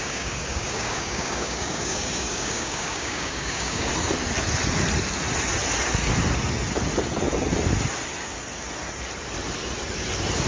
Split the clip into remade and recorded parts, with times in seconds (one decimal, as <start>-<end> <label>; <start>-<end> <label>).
0.0-3.9 remade; 3.9-10.5 recorded